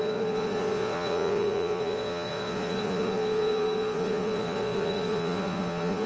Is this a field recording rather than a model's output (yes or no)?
no